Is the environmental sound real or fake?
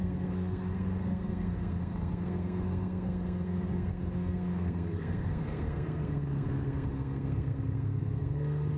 fake